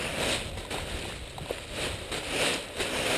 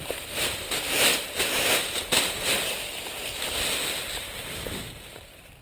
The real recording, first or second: first